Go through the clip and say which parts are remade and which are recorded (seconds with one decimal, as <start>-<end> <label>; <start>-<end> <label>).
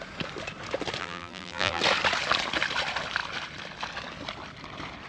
0.0-1.0 recorded; 1.0-1.8 remade; 1.8-5.1 recorded